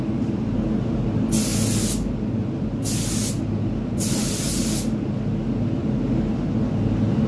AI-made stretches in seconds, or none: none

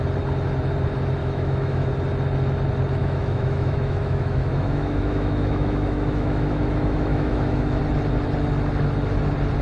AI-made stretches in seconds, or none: 1.2-1.9 (autoencoder, DAC-VAE); 3.0-7.8

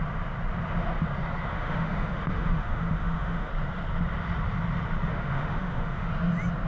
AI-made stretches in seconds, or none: 1.5-3.5 (autoencoder, DAC-VAE); 5.1-6.1